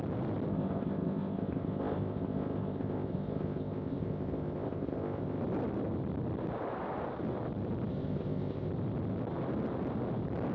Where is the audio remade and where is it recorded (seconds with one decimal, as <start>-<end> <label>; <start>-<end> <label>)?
0.0-0.5 recorded; 0.5-5.4 remade; 5.4-7.9 recorded; 7.9-8.7 remade; 8.7-10.5 recorded